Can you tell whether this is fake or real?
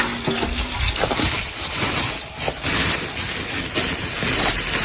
real